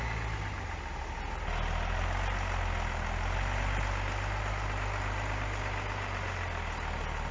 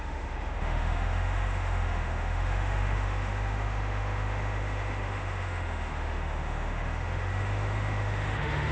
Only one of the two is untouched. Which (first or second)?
first